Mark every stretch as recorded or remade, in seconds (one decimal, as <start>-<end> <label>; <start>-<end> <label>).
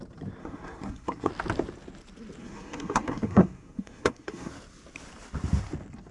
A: 0.0-0.4 recorded; 0.4-1.3 remade; 1.3-2.4 recorded; 2.4-4.5 remade; 4.5-6.1 recorded